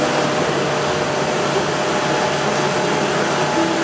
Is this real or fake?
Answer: real